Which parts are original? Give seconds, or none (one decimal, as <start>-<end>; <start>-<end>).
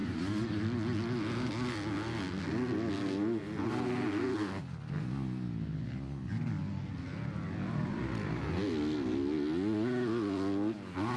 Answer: 0.6-11.2